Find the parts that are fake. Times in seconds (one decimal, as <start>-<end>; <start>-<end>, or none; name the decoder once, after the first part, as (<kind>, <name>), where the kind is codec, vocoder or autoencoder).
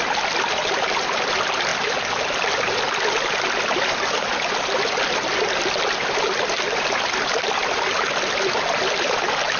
none